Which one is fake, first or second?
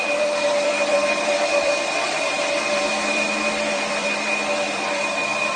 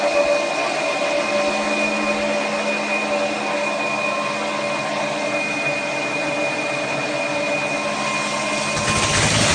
first